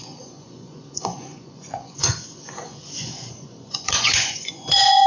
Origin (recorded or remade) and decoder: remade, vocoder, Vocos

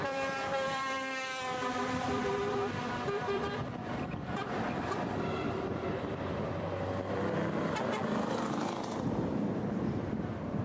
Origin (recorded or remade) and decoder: remade, vocoder, BigVGAN v2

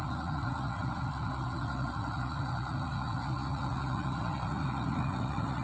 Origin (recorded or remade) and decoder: remade, vocoder, Vocos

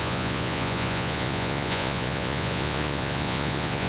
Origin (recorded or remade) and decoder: remade, vocoder, Vocos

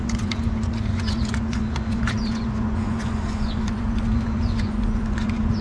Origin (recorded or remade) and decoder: remade, vocoder, Vocos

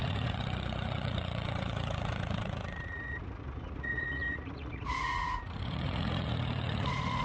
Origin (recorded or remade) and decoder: remade, vocoder, Vocos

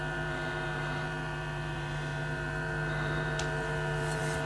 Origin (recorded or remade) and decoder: remade, vocoder, BigVGAN v2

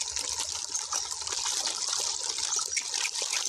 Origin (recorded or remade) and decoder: recorded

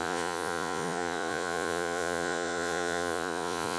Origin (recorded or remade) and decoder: remade, vocoder, Vocos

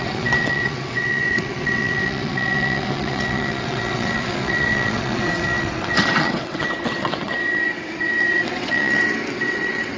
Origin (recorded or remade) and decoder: remade, vocoder, WaveNeXt